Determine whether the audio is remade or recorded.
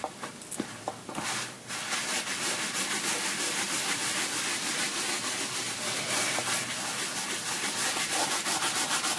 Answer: recorded